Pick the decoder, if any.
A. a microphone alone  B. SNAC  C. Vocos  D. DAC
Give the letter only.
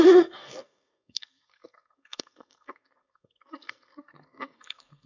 B